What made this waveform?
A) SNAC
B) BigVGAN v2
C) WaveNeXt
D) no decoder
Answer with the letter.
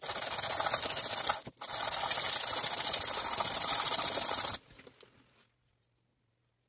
D